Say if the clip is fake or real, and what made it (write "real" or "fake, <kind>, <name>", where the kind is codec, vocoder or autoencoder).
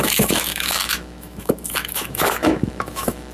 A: fake, autoencoder, DAC-VAE